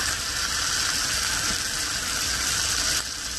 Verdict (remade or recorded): recorded